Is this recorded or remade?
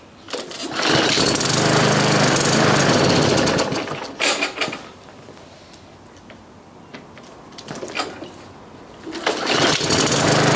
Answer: recorded